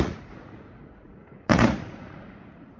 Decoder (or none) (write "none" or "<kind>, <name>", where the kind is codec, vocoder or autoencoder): vocoder, Vocos